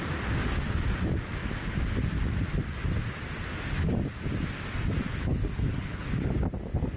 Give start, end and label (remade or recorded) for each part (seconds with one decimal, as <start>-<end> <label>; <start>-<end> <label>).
0.0-5.1 recorded; 5.1-6.3 remade; 6.3-7.0 recorded